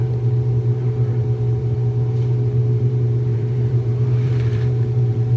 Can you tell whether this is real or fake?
fake